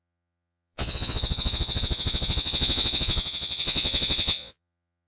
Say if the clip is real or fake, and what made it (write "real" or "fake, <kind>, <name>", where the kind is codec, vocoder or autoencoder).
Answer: fake, vocoder, Vocos